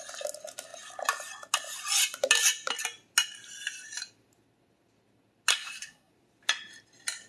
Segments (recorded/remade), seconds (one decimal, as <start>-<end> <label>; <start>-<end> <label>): 0.0-5.5 recorded; 5.5-6.1 remade; 6.1-7.3 recorded